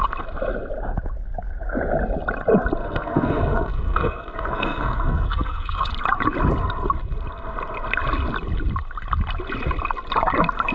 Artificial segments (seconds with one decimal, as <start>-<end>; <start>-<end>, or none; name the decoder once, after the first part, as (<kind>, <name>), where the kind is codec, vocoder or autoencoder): 2.8-5.9 (codec, SNAC)